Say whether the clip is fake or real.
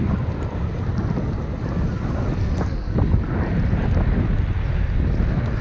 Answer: real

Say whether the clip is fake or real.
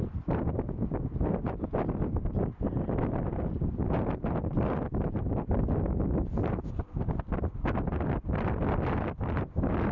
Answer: real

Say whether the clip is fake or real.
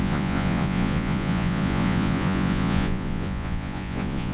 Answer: fake